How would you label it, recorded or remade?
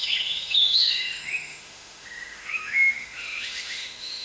remade